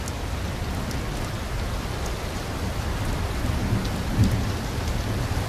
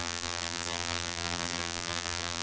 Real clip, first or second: first